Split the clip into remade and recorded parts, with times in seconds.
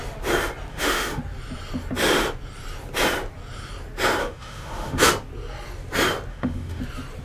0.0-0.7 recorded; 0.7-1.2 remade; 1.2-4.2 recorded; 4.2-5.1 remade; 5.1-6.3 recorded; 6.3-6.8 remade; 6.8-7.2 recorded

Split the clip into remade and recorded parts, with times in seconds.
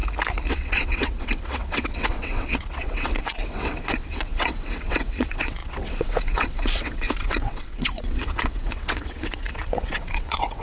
0.0-0.5 recorded; 0.5-10.6 remade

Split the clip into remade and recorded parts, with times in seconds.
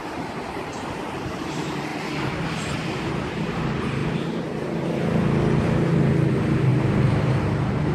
0.0-1.9 remade; 1.9-3.1 recorded; 3.1-4.0 remade; 4.0-6.3 recorded; 6.3-7.9 remade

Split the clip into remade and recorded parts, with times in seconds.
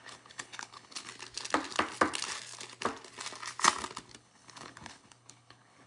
0.0-1.1 remade; 1.1-4.2 recorded; 4.2-5.9 remade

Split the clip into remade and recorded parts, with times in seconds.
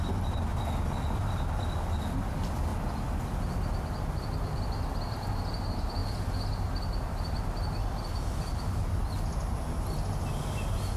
0.0-11.0 recorded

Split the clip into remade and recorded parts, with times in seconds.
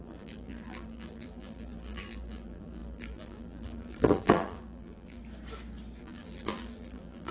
0.0-5.2 remade; 5.2-6.0 recorded; 6.0-7.3 remade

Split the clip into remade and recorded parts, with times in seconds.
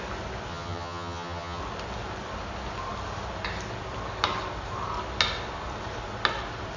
0.0-0.5 recorded; 0.5-1.6 remade; 1.6-6.8 recorded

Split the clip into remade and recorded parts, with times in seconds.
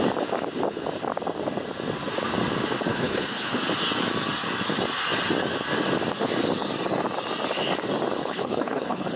0.0-2.9 recorded; 2.9-3.6 remade; 3.6-8.2 recorded; 8.2-9.2 remade